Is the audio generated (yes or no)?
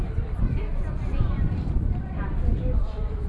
yes